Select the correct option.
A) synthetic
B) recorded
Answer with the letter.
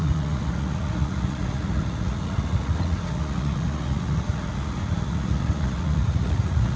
A